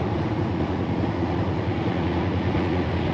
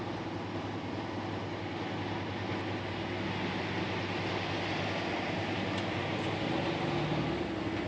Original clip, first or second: second